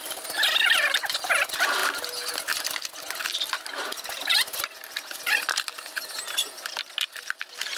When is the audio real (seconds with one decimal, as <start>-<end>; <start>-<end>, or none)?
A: 0.0-7.8